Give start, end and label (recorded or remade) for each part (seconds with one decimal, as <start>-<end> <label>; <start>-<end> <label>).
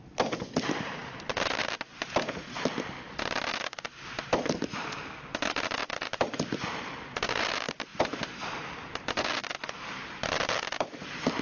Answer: 0.0-11.4 recorded